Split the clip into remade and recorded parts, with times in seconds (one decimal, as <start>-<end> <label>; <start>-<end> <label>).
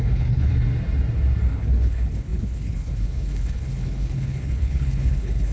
0.0-0.5 remade; 0.5-1.5 recorded; 1.5-5.5 remade